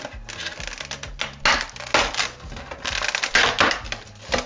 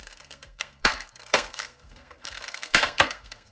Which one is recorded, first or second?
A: first